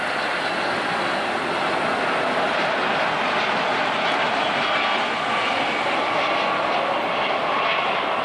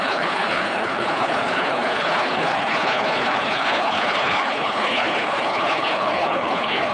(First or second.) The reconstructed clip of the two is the second